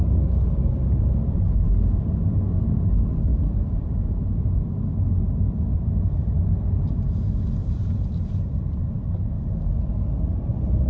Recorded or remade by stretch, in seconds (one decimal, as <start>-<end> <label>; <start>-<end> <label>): 0.0-3.3 recorded; 3.3-6.4 remade; 6.4-7.6 recorded; 7.6-9.3 remade; 9.3-10.9 recorded